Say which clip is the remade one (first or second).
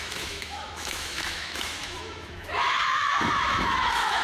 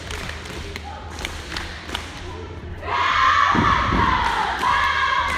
first